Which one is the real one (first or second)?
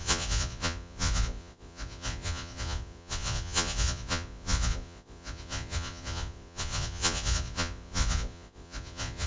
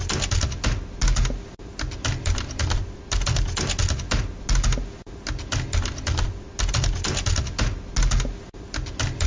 second